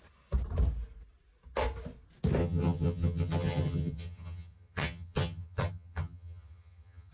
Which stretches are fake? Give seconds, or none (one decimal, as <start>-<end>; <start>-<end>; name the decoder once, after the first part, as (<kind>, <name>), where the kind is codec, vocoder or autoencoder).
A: 2.4-7.1 (vocoder, HiFi-GAN)